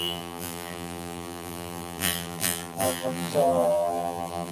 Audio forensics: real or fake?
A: fake